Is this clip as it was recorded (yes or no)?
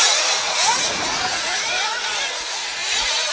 no